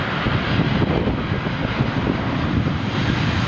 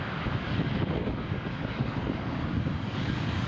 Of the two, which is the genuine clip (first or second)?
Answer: first